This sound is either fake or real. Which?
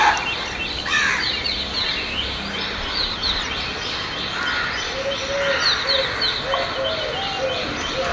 real